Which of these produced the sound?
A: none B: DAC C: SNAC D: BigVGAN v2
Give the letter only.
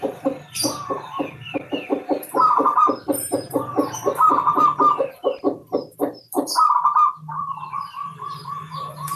D